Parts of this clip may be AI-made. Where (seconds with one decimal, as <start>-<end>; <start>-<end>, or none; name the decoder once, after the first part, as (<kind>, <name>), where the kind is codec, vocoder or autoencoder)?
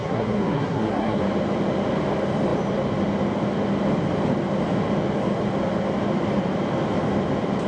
0.0-1.2 (codec, SNAC)